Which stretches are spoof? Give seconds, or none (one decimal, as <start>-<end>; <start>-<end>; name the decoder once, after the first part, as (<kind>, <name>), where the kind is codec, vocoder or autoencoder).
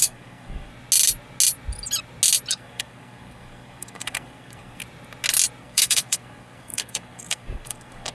0.0-0.7 (codec, SNAC); 2.5-4.8; 5.6-8.1